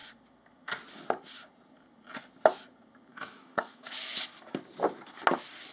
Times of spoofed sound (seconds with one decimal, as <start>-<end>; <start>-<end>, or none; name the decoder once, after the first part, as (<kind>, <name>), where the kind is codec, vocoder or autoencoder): 3.1-3.9 (autoencoder, DAC-VAE)

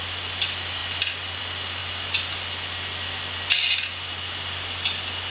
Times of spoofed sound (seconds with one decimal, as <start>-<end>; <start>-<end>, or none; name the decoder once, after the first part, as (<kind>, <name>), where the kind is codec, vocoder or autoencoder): none